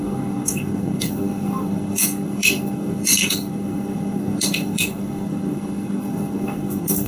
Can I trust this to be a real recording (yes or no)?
no